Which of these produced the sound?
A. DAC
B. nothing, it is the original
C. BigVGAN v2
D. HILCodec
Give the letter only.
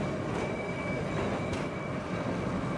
B